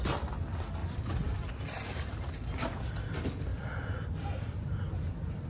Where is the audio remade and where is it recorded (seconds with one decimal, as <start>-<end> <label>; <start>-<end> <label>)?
0.0-0.8 recorded; 0.8-2.9 remade; 2.9-3.5 recorded; 3.5-5.0 remade; 5.0-5.5 recorded

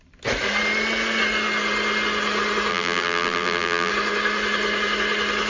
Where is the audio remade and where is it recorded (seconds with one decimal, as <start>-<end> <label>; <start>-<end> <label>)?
0.0-2.7 recorded; 2.7-3.9 remade; 3.9-5.5 recorded

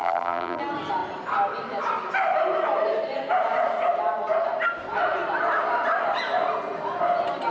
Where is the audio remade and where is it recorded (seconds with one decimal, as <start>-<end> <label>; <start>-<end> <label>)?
0.0-0.6 remade; 0.6-7.5 recorded

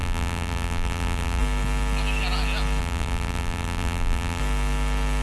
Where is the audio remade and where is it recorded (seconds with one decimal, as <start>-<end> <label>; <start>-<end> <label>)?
0.0-1.4 remade; 1.4-2.8 recorded; 2.8-4.4 remade; 4.4-5.2 recorded

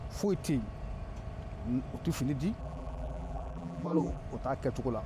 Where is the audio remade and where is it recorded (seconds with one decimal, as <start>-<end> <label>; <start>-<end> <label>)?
0.0-2.6 recorded; 2.6-4.2 remade; 4.2-5.1 recorded

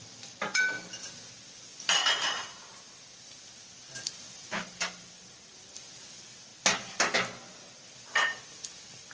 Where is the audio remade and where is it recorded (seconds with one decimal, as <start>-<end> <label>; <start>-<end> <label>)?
0.0-2.0 recorded; 2.0-2.9 remade; 2.9-9.1 recorded